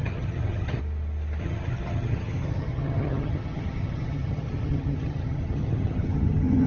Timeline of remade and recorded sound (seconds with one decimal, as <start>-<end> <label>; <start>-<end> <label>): 0.0-0.8 remade; 0.8-1.4 recorded; 1.4-6.7 remade

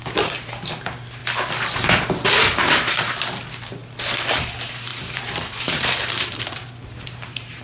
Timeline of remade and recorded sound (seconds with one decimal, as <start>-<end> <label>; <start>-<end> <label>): 0.0-1.2 remade; 1.2-2.7 recorded; 2.7-3.8 remade; 3.8-4.3 recorded; 4.3-7.6 remade

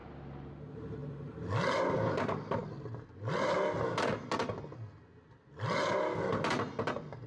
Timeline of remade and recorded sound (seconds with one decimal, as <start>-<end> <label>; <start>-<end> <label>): 0.0-7.3 recorded

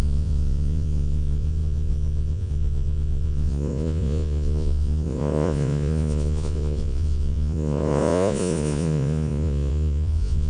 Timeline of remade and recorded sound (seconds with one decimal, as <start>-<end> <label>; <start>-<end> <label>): 0.0-10.5 remade

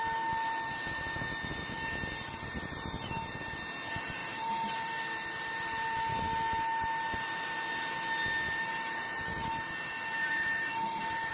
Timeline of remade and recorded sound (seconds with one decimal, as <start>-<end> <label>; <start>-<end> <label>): 0.0-4.2 recorded; 4.2-5.7 remade; 5.7-10.2 recorded; 10.2-11.3 remade

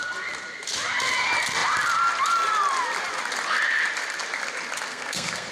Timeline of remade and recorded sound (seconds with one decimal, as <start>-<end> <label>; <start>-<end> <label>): 0.0-4.9 recorded; 4.9-5.5 remade